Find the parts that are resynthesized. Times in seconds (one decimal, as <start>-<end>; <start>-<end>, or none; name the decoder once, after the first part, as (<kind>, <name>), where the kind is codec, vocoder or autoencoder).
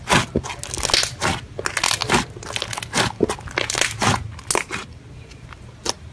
none